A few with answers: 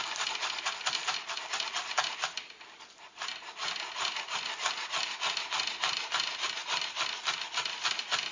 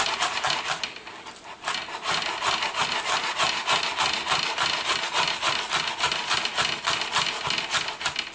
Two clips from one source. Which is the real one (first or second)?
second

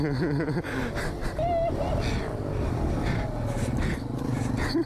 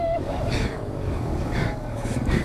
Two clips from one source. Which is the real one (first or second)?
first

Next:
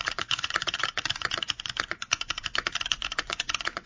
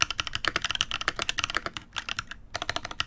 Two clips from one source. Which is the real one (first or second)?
second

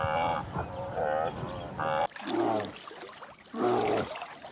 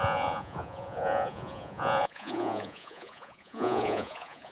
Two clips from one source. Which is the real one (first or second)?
first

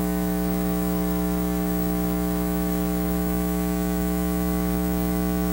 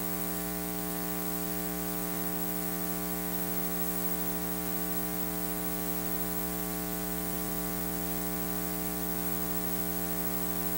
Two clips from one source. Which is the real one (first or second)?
second